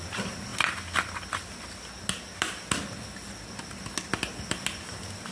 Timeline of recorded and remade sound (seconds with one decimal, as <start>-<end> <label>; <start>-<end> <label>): 0.0-5.3 recorded

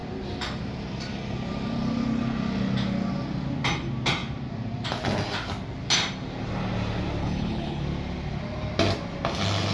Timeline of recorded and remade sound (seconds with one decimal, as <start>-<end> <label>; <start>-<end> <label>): 0.0-7.2 recorded; 7.2-7.8 remade; 7.8-9.7 recorded

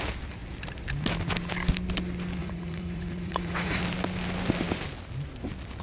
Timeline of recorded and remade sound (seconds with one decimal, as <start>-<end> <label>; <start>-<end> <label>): 0.0-2.4 recorded; 2.4-3.8 remade; 3.8-5.8 recorded

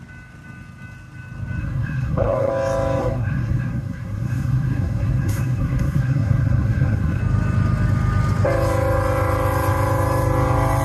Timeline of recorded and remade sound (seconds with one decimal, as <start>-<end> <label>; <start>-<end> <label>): 0.0-1.6 recorded; 1.6-2.5 remade; 2.5-3.0 recorded; 3.0-7.2 remade; 7.2-10.8 recorded